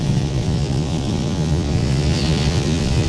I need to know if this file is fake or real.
fake